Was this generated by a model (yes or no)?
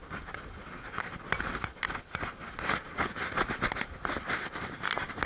no